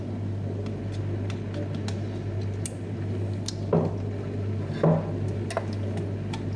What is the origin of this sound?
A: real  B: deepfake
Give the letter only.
A